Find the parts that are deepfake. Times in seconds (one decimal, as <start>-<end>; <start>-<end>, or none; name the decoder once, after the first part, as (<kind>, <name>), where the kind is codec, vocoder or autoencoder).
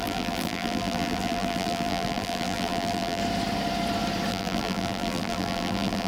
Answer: 0.0-3.2 (vocoder, BigVGAN v2); 4.3-6.1